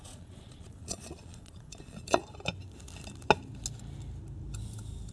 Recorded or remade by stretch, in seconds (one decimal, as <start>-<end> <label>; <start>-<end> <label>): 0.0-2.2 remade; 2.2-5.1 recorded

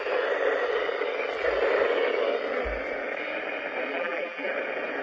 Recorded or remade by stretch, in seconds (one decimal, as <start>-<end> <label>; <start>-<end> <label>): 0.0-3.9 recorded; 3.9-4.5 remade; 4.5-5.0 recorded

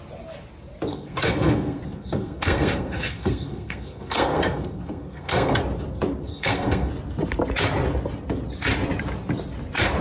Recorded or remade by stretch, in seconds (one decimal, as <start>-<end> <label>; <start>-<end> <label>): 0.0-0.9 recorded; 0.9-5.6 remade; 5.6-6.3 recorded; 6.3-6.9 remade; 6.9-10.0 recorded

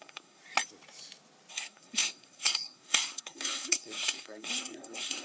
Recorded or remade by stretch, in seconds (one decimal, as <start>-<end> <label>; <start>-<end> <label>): 0.0-0.4 remade; 0.4-1.5 recorded; 1.5-5.2 remade

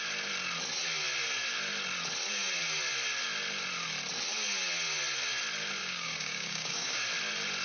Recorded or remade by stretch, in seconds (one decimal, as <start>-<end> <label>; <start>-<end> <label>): 0.0-5.8 recorded; 5.8-7.0 remade; 7.0-7.6 recorded

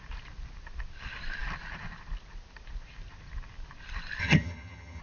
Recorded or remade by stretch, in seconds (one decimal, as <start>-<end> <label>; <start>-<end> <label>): 0.0-4.2 recorded; 4.2-5.0 remade

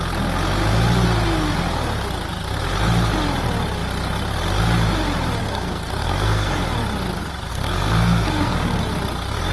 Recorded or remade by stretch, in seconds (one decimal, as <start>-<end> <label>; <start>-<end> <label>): 0.0-5.4 recorded; 5.4-6.6 remade; 6.6-7.5 recorded; 7.5-8.8 remade; 8.8-9.5 recorded